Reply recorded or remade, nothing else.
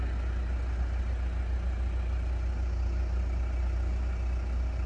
recorded